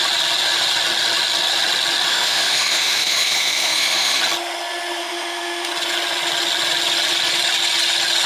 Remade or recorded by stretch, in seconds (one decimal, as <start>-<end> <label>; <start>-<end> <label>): 0.0-2.1 recorded; 2.1-4.2 remade; 4.2-5.0 recorded; 5.0-5.7 remade; 5.7-8.3 recorded